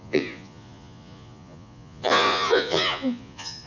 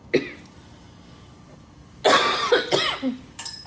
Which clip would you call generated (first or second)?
first